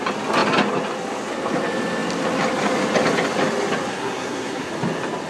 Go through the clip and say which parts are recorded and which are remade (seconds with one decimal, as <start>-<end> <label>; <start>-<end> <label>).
0.0-3.9 recorded; 3.9-4.7 remade; 4.7-5.3 recorded